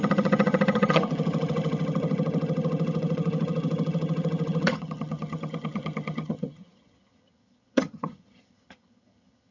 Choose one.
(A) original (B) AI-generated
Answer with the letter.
B